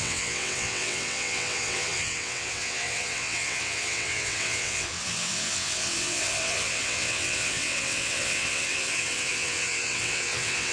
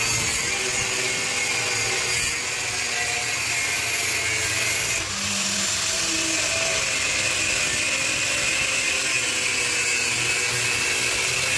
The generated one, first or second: first